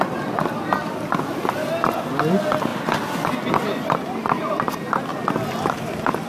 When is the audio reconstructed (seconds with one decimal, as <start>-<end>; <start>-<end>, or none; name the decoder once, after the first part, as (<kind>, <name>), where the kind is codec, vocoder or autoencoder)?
none